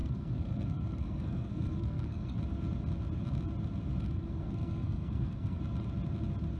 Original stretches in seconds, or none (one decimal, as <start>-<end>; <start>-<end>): 2.4-4.0; 5.6-6.6